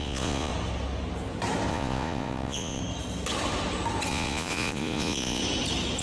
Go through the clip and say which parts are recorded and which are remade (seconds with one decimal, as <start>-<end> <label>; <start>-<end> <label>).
0.0-0.5 remade; 0.5-1.7 recorded; 1.7-2.8 remade; 2.8-4.1 recorded; 4.1-5.4 remade; 5.4-6.0 recorded